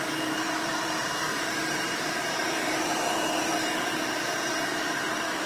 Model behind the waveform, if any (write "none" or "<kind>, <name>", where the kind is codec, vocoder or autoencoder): vocoder, BigVGAN v2